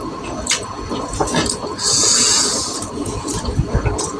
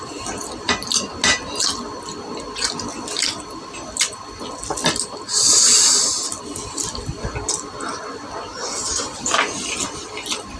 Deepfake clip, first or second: first